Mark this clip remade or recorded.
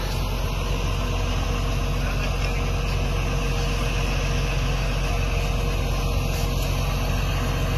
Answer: recorded